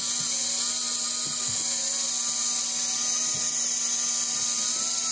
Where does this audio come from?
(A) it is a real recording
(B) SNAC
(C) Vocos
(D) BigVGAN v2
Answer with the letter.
A